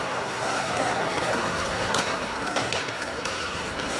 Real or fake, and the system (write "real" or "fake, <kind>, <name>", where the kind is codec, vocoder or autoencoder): fake, codec, SNAC